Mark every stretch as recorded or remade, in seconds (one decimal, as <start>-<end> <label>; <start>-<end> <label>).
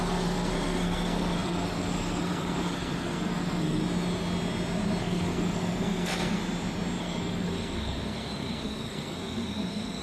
0.0-3.8 remade; 3.8-5.0 recorded; 5.0-6.4 remade; 6.4-7.0 recorded; 7.0-10.0 remade